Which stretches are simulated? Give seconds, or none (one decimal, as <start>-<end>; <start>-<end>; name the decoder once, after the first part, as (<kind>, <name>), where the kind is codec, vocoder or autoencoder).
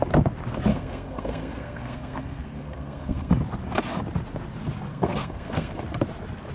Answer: 0.7-3.3 (codec, SNAC); 4.9-5.8